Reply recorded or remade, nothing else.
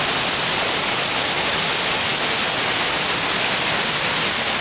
recorded